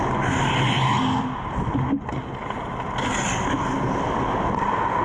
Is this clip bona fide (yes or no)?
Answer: yes